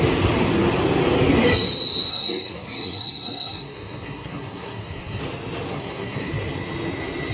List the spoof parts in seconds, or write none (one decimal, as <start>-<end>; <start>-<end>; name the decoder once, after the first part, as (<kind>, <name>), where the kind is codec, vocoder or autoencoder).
2.1-5.2 (codec, SNAC); 5.7-6.3